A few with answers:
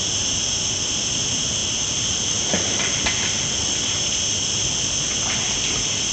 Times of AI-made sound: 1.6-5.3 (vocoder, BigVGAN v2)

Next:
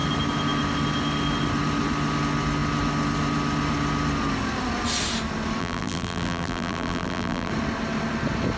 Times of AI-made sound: 5.6-7.5 (vocoder, BigVGAN v2)

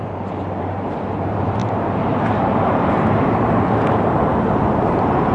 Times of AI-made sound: 0.0-5.3 (vocoder, BigVGAN v2)

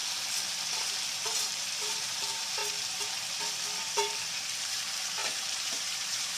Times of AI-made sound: 1.4-2.6 (vocoder, BigVGAN v2); 3.8-6.4